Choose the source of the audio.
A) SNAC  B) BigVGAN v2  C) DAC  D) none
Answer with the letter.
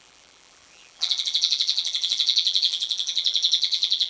B